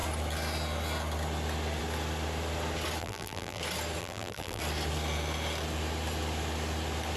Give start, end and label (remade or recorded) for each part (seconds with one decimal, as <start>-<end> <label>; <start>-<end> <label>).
0.0-3.0 recorded; 3.0-3.6 remade; 3.6-4.0 recorded; 4.0-4.6 remade; 4.6-7.2 recorded